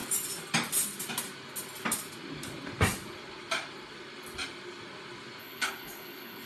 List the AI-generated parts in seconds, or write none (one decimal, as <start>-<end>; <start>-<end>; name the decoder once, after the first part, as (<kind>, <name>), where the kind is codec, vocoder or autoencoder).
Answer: 5.4-6.5 (codec, HILCodec)